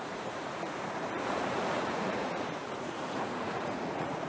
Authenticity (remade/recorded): remade